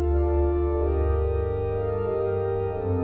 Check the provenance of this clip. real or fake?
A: real